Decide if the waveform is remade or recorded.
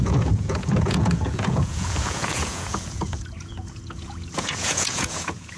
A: remade